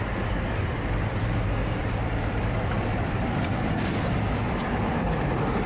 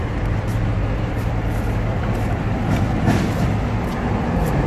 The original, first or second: second